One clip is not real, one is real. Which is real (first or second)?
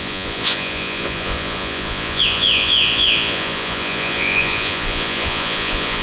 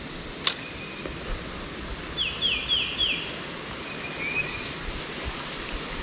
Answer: second